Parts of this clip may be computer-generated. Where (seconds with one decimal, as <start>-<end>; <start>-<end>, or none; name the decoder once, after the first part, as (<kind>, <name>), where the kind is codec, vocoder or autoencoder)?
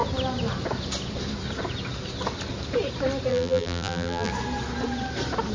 3.3-4.3 (vocoder, BigVGAN v2)